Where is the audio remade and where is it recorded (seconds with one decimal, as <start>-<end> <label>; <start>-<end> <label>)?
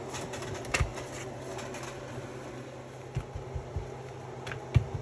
0.0-5.0 recorded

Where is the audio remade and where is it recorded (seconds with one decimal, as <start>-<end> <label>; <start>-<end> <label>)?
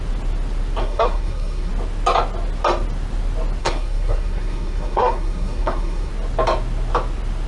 0.0-0.8 recorded; 0.8-1.7 remade; 1.7-3.6 recorded; 3.6-6.1 remade; 6.1-7.5 recorded